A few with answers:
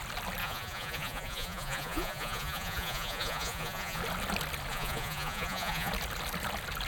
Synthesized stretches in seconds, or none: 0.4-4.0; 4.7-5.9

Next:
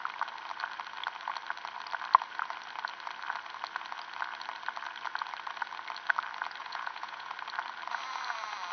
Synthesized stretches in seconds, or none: 6.6-7.3

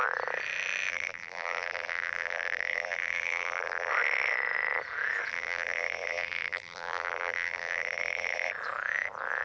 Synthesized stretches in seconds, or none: 0.9-3.9; 5.3-8.5

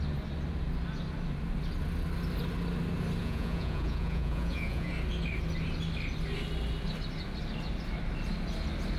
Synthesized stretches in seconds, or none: 3.2-4.9

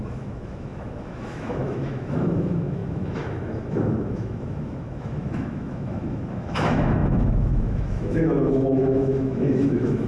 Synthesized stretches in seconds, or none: 0.0-10.1

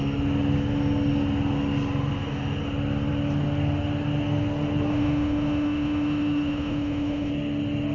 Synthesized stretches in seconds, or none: 4.9-7.3